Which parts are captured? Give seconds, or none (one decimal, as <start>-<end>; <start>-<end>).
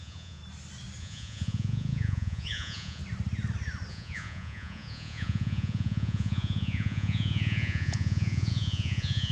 0.4-1.0; 3.0-3.9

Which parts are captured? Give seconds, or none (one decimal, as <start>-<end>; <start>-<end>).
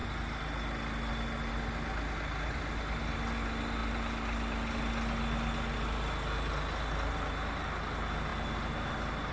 0.0-9.3